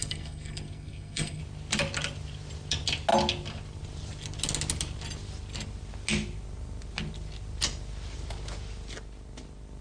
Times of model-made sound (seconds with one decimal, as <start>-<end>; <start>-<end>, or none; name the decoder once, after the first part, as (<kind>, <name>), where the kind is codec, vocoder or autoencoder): 0.0-1.4 (codec, SNAC)